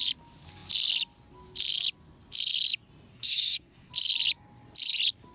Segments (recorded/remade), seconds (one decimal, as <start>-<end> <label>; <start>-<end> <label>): 0.0-3.1 recorded; 3.1-3.9 remade; 3.9-5.3 recorded